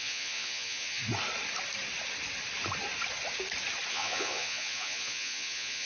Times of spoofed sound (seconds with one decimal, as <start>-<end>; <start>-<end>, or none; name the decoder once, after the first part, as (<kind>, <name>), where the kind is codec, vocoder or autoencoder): 0.0-1.0 (vocoder, Vocos); 3.9-5.9